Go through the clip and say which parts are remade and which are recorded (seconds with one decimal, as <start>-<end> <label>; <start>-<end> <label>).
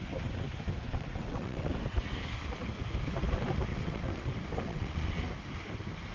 0.0-0.9 recorded; 0.9-1.7 remade; 1.7-3.7 recorded; 3.7-4.3 remade; 4.3-4.7 recorded; 4.7-5.2 remade; 5.2-6.1 recorded